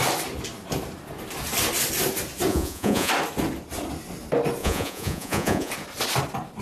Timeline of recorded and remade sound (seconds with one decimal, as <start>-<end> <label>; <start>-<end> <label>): 0.0-2.5 recorded; 2.5-3.1 remade; 3.1-4.6 recorded; 4.6-5.7 remade; 5.7-6.6 recorded